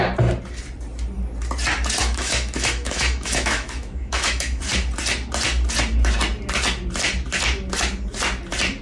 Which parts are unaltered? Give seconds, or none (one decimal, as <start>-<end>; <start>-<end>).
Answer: 0.0-2.0; 4.6-8.8